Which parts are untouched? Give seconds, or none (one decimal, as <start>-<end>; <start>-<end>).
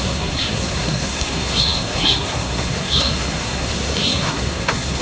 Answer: none